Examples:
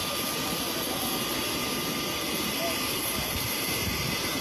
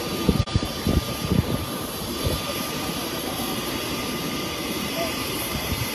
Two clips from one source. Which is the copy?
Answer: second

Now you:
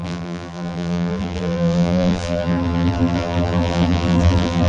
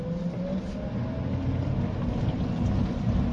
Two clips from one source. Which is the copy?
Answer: first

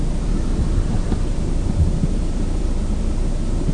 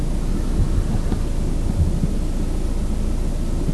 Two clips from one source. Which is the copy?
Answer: first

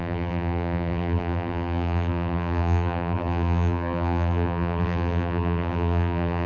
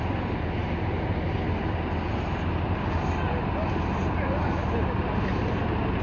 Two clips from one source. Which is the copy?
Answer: first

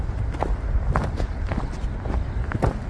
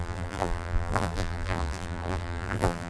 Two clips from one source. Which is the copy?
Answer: second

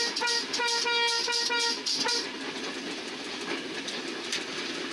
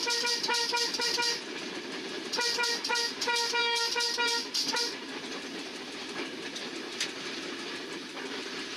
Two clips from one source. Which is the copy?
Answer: second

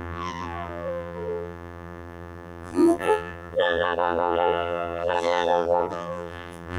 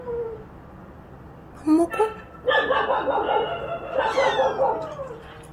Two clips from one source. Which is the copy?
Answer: first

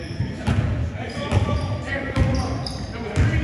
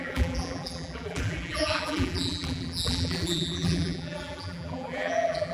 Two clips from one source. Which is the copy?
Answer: second